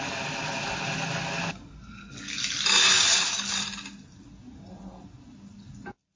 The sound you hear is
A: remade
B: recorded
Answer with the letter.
B